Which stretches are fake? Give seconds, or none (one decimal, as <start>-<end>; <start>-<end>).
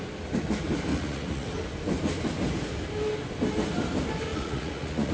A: 0.9-1.5; 4.3-5.1